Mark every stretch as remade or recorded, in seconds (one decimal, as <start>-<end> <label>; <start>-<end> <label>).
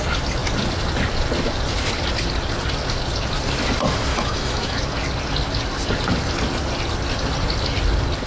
0.0-4.1 recorded; 4.1-4.8 remade; 4.8-8.3 recorded